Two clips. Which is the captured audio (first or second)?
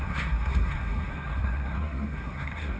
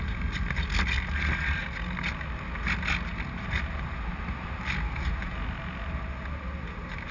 second